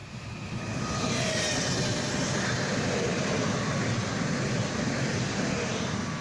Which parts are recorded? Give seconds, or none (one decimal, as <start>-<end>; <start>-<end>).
0.0-6.2